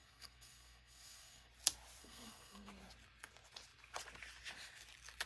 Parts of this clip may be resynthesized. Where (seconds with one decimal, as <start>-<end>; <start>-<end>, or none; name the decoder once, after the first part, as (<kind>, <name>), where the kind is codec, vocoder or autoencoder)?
0.0-1.5 (codec, SNAC); 2.0-2.7